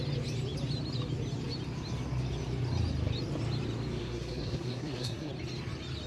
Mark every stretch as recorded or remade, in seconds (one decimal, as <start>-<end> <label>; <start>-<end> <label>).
0.0-4.0 recorded; 4.0-5.3 remade; 5.3-6.1 recorded